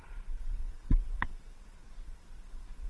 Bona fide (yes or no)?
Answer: no